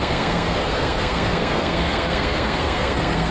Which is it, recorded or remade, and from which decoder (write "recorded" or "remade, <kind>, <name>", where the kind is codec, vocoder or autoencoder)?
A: remade, codec, SNAC